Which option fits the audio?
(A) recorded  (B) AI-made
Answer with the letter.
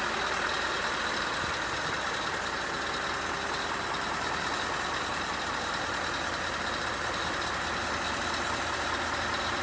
A